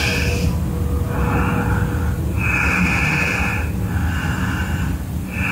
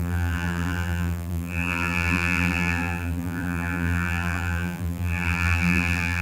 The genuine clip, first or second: first